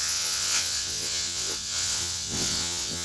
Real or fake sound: fake